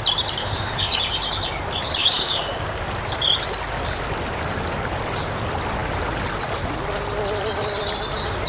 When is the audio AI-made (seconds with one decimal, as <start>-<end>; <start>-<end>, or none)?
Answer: 0.4-1.0; 2.0-2.8

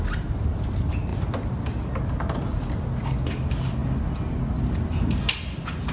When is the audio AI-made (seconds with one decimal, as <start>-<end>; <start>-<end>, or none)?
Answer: none

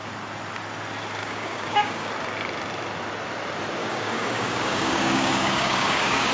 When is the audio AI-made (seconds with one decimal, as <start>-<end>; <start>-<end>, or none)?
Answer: 1.2-2.1; 3.8-6.3

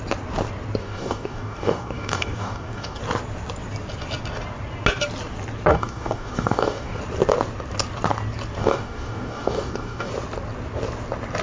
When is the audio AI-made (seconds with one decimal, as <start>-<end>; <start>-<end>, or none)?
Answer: 0.8-3.0; 5.7-7.0; 8.6-10.1

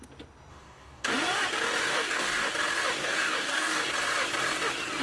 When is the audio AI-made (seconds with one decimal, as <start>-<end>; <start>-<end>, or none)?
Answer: 0.5-1.1; 1.9-2.5; 3.0-3.9

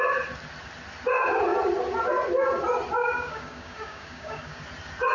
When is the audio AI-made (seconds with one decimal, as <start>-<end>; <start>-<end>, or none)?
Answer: 3.0-4.6

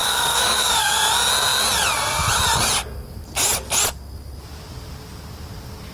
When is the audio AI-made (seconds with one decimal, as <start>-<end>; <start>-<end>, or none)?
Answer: 0.0-0.9